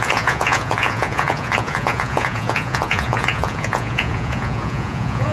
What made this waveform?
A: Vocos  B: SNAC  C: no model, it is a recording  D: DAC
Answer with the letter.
A